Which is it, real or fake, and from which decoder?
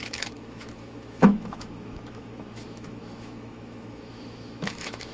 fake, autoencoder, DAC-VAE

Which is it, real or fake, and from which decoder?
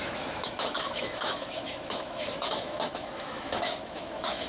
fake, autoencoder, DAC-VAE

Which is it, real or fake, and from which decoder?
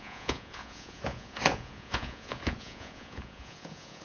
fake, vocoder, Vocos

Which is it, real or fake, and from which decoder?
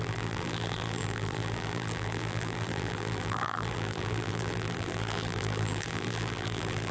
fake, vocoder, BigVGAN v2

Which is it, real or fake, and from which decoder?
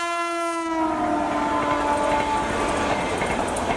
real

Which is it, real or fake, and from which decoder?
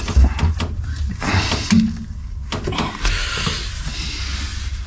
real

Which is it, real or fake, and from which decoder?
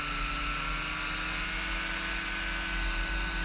real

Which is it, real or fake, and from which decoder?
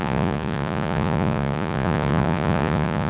fake, vocoder, Vocos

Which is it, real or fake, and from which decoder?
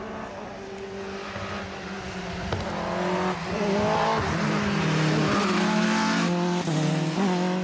real